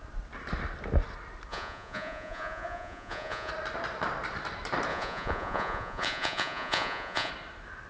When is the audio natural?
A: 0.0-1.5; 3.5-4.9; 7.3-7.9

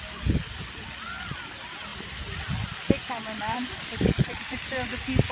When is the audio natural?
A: 0.0-5.3

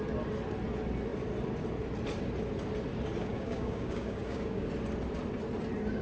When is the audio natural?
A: 0.0-3.2; 4.7-6.0